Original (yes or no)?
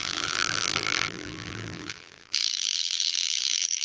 no